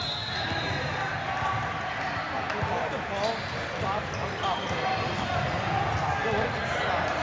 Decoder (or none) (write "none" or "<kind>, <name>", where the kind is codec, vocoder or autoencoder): none